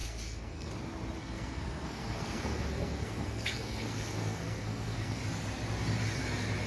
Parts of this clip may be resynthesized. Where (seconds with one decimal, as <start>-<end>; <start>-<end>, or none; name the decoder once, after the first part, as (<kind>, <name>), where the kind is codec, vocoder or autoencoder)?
0.0-0.7 (codec, SNAC); 1.2-5.2